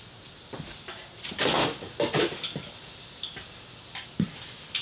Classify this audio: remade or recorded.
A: recorded